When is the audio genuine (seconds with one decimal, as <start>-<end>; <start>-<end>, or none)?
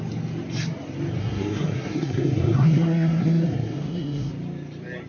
0.0-1.2; 4.3-5.1